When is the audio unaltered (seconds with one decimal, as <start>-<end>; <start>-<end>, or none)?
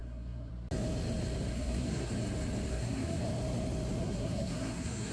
0.5-1.5; 2.1-2.7; 3.2-4.0